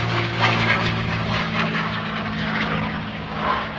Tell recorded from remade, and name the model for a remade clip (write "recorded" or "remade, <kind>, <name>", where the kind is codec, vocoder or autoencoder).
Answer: remade, codec, DAC